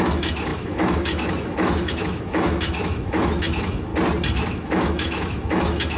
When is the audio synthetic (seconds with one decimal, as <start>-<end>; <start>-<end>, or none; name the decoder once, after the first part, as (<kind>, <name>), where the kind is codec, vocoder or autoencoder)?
0.0-3.9 (autoencoder, DAC-VAE); 4.5-6.0